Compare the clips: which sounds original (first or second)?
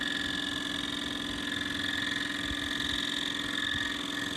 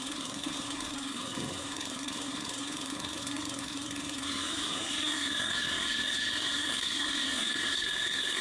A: first